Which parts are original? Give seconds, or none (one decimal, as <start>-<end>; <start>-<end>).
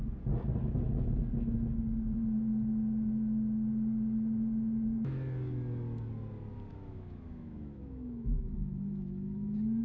0.0-6.7